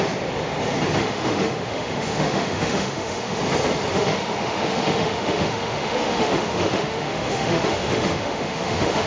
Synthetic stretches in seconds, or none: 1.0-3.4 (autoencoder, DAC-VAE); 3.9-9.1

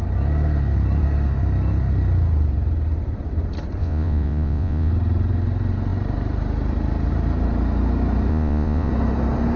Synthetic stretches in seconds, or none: 3.8-4.9 (vocoder, Vocos); 8.3-8.9

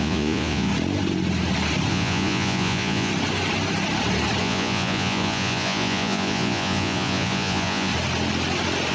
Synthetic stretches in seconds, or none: 0.0-0.7 (vocoder, Vocos); 1.9-3.1; 4.4-7.9

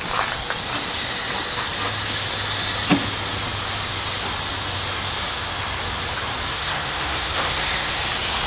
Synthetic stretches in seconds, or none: 6.5-8.0 (codec, SNAC)